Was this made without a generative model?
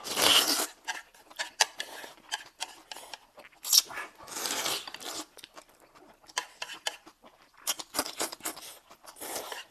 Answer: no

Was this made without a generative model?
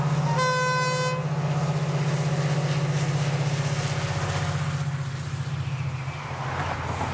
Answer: yes